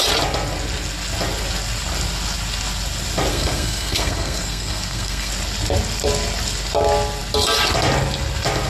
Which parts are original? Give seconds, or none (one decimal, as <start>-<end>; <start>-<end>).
0.0-3.3; 5.3-8.7